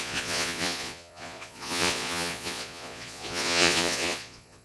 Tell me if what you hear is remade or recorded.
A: remade